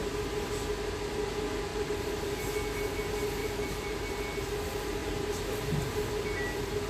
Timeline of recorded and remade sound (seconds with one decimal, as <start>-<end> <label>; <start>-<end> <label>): 0.0-1.7 recorded; 1.7-2.4 remade; 2.4-3.4 recorded; 3.4-4.1 remade; 4.1-5.0 recorded; 5.0-6.1 remade; 6.1-6.9 recorded